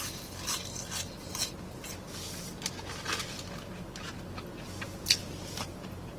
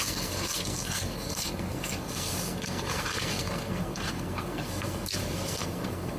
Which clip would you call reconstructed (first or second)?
second